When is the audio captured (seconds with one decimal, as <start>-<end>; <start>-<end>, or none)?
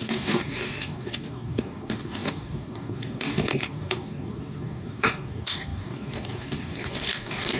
none